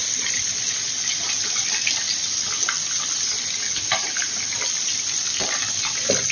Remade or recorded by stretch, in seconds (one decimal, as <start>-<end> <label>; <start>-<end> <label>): 0.0-6.3 recorded